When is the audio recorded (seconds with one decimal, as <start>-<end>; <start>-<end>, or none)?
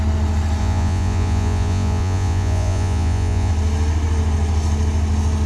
0.0-0.6; 3.5-5.5